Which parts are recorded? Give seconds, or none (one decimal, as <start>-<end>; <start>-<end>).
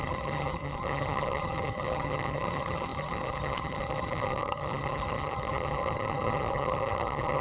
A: none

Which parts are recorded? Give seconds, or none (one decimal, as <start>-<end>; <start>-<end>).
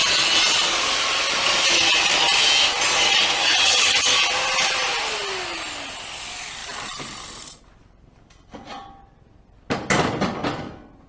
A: 0.0-3.4; 4.1-11.1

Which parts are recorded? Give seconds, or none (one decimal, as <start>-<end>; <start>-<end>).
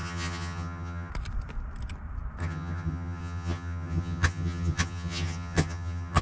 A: 1.1-2.4